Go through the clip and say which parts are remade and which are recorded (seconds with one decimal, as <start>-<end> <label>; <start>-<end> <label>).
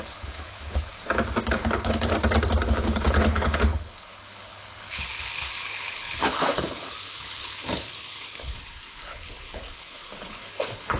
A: 0.0-0.9 remade; 0.9-1.4 recorded; 1.4-2.1 remade; 2.1-2.7 recorded; 2.7-11.0 remade